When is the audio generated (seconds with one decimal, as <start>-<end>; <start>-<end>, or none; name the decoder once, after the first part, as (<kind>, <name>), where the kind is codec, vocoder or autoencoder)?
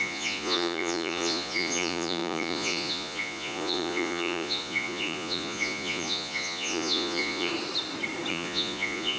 0.0-7.5 (vocoder, Vocos); 8.3-9.2